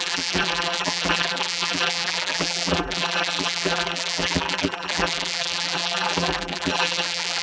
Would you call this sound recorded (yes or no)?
no